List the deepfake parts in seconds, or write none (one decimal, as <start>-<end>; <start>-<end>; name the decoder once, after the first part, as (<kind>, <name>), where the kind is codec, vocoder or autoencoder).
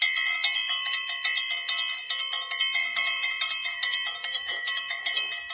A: 2.8-5.0 (vocoder, BigVGAN v2)